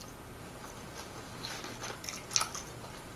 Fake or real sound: real